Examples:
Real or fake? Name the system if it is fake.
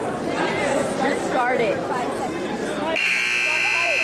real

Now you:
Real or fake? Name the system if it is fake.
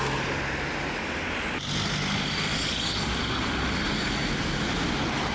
real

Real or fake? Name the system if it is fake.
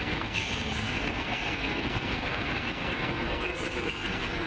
fake, codec, SNAC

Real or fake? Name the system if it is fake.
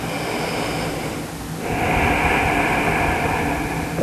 real